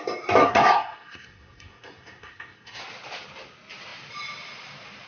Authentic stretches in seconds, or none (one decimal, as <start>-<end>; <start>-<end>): 0.0-0.4; 2.8-5.1